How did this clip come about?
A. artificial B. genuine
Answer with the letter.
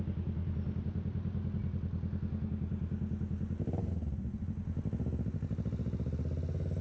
B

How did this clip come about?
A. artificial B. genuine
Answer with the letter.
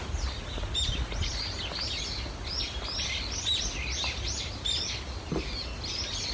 B